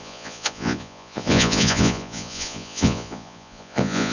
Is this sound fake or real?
fake